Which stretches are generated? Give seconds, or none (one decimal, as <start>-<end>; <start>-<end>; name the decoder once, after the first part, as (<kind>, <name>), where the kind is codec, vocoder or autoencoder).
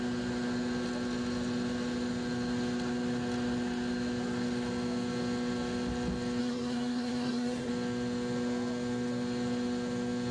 6.4-7.7 (codec, SNAC)